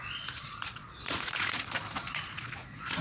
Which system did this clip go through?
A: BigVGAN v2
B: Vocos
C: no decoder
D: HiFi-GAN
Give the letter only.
B